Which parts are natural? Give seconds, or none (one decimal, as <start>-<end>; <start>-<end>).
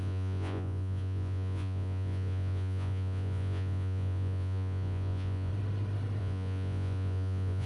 5.5-6.2